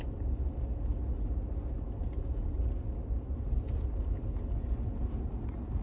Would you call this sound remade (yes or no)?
no